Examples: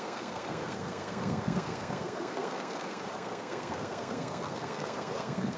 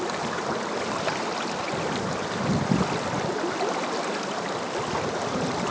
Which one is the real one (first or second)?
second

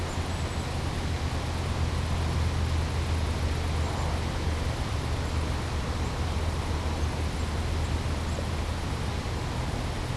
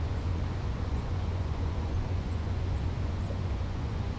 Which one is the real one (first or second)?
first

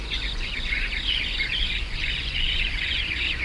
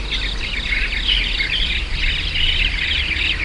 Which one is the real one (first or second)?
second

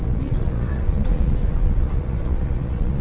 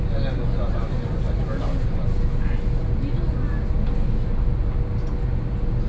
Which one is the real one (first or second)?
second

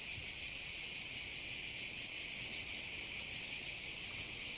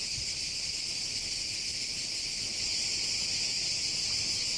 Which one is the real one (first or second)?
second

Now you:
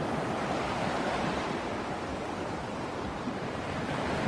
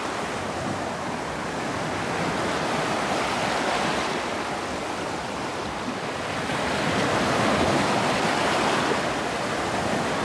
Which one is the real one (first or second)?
second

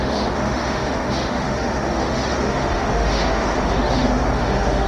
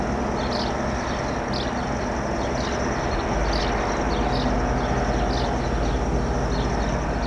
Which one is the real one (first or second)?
second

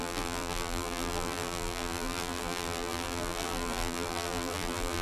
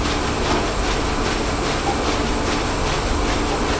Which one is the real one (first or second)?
second